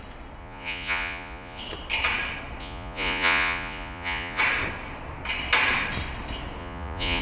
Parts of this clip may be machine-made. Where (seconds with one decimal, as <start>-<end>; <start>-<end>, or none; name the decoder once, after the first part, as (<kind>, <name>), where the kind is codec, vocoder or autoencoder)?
0.4-1.6 (vocoder, Vocos); 2.6-4.4; 6.6-7.2